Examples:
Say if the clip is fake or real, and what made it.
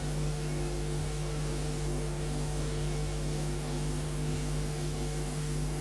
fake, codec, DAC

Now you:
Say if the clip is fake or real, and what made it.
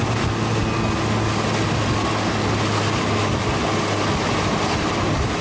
real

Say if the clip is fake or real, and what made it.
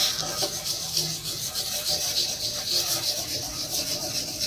real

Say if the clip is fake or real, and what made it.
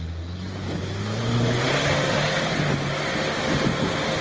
real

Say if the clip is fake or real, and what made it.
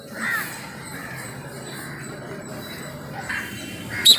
real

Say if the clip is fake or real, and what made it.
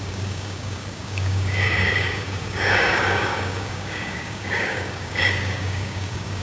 fake, codec, DAC